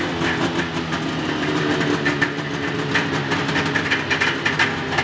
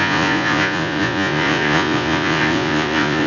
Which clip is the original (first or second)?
first